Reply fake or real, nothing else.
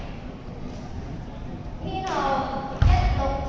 real